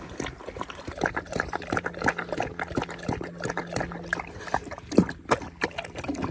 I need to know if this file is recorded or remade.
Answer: recorded